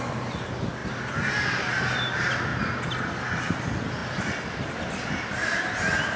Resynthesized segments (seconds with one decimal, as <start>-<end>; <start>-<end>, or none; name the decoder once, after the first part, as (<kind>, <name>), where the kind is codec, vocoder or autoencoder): none